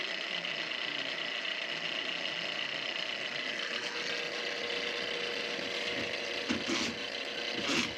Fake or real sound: real